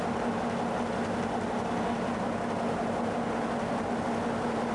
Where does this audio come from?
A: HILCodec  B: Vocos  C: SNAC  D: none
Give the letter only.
D